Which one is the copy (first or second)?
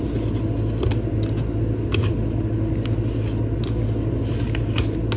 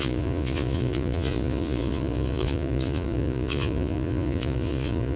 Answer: second